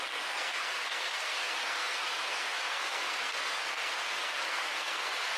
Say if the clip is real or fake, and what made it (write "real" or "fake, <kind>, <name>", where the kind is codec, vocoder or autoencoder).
fake, codec, SNAC